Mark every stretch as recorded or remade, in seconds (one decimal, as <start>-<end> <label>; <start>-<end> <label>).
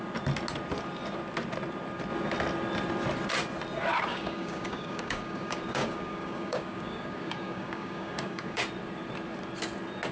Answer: 0.0-4.1 recorded; 4.1-8.6 remade; 8.6-10.1 recorded